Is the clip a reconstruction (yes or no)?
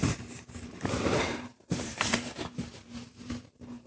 yes